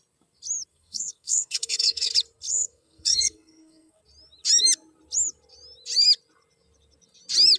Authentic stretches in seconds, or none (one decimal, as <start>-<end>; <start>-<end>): 0.0-0.7; 2.1-2.5; 4.0-7.6